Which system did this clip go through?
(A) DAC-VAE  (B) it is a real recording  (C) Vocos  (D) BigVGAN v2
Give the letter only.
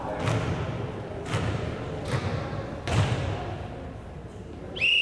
B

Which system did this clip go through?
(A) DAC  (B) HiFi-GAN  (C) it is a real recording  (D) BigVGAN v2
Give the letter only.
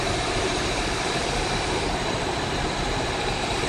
D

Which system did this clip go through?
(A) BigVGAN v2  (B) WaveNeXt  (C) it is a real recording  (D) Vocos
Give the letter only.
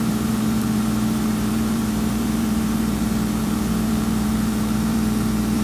A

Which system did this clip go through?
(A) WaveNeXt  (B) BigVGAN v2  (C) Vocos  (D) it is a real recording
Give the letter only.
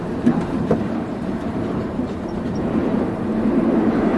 B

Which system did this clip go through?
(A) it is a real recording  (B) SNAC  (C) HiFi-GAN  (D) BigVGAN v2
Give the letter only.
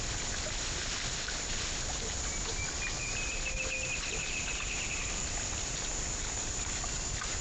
A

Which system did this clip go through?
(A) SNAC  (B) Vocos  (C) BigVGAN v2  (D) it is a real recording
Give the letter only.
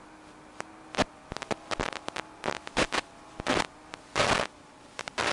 D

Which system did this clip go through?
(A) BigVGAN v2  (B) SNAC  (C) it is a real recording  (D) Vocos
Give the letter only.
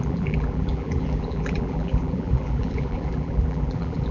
A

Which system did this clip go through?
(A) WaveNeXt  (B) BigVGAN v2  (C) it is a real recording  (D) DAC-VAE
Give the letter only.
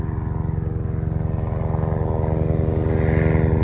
C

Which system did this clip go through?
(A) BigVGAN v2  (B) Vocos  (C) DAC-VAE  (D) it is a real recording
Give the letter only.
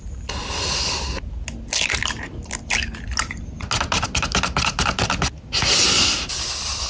D